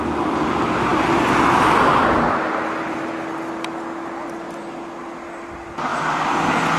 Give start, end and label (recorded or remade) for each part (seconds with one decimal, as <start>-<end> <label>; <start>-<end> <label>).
0.0-6.8 recorded